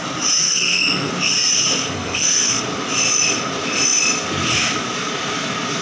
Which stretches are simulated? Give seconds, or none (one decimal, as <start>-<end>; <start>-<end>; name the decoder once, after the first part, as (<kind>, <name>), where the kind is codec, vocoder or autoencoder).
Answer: 0.4-1.1 (codec, SNAC); 1.8-2.6